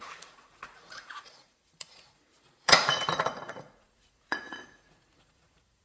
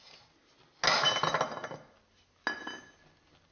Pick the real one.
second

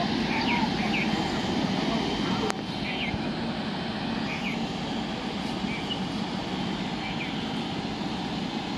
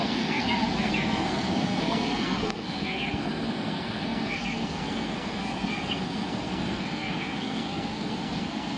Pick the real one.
first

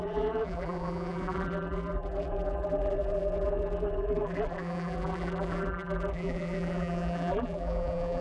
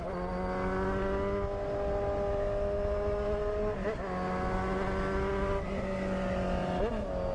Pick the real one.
second